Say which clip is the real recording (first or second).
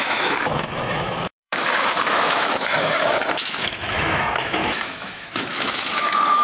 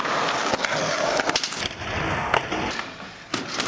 second